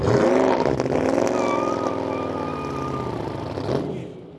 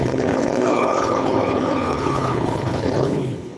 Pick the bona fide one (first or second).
first